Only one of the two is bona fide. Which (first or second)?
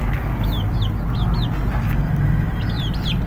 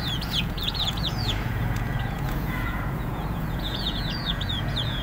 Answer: first